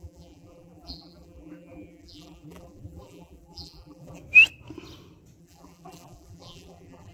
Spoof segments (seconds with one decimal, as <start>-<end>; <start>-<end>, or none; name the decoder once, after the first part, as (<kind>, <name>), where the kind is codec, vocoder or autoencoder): 0.0-4.2 (vocoder, BigVGAN v2); 5.4-7.1